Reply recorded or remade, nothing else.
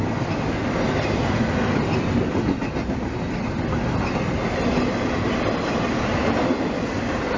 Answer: recorded